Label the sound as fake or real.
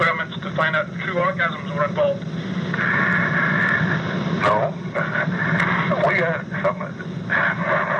real